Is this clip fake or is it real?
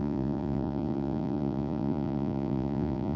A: fake